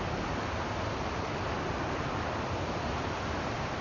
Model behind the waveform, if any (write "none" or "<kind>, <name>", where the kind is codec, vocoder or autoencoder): none